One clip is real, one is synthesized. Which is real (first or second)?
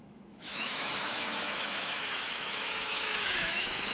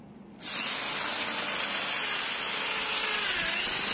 second